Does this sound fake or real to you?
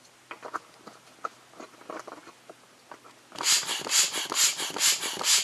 real